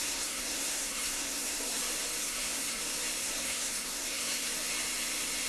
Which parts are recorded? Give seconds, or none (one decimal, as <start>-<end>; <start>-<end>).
1.8-2.2; 2.8-3.2; 4.5-5.5